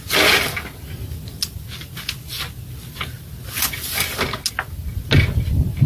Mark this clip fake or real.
real